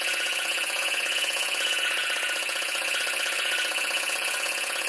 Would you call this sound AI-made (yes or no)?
yes